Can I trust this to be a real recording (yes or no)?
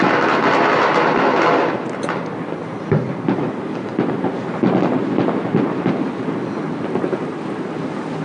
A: yes